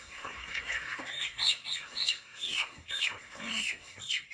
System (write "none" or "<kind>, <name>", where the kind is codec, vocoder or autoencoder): codec, SNAC